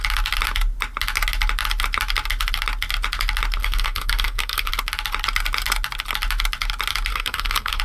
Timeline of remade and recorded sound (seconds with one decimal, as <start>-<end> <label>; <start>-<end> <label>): 0.0-3.6 recorded; 3.6-4.7 remade; 4.7-7.1 recorded; 7.1-7.8 remade